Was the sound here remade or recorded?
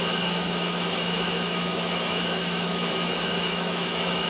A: remade